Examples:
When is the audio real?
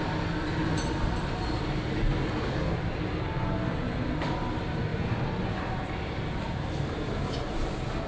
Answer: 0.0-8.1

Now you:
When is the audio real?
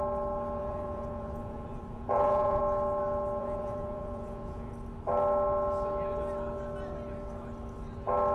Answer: 0.0-0.6; 2.6-3.4; 4.7-8.3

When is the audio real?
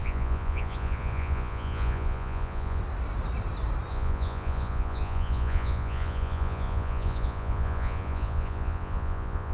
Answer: 2.8-3.9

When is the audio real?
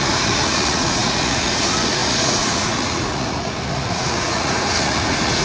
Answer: none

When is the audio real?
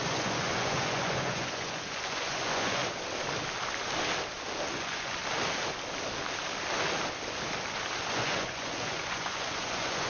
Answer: 2.8-4.7; 5.2-8.1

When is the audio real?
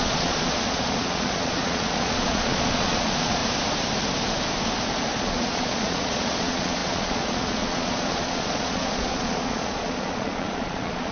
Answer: 3.4-5.2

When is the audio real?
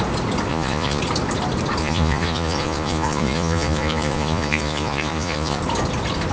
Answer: 0.0-0.5; 1.0-1.8; 5.6-6.3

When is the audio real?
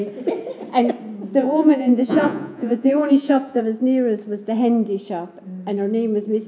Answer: 0.0-1.4; 3.6-6.5